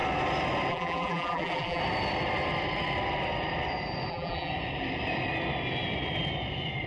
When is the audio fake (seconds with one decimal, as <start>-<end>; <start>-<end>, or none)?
0.7-1.8; 4.1-4.5